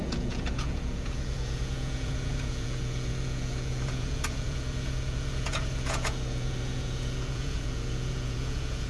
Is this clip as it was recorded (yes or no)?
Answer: no